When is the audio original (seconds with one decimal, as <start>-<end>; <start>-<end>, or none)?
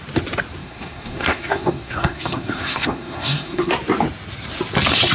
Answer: 0.0-0.6; 3.7-5.1